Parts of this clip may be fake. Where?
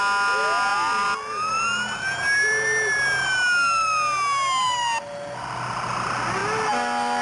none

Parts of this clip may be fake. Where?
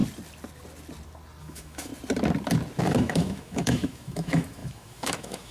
1.4-1.9 (autoencoder, DAC-VAE); 2.8-5.5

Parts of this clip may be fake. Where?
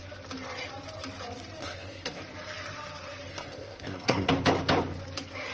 1.6-2.2 (codec, SNAC); 3.3-4.3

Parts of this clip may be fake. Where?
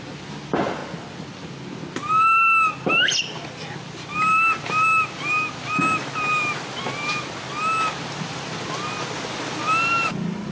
none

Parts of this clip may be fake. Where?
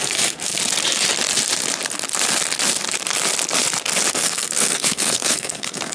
0.0-0.6 (codec, SNAC); 4.1-5.9